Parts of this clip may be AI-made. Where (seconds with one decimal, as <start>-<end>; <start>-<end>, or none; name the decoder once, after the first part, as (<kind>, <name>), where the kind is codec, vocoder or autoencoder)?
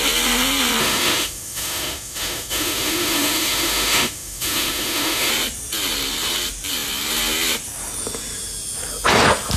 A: 0.8-5.3 (autoencoder, DAC-VAE)